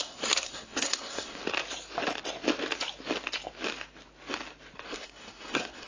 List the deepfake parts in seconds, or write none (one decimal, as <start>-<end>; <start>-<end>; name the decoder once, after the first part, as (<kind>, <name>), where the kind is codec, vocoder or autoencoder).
0.0-1.4 (codec, SNAC); 4.9-5.9